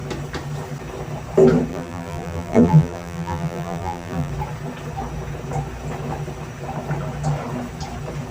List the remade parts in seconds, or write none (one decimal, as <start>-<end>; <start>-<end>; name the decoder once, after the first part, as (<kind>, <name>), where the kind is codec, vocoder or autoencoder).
1.7-4.3 (vocoder, BigVGAN v2)